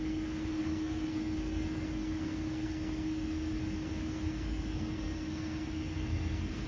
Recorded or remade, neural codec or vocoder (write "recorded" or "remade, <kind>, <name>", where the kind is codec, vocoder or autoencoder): remade, codec, SNAC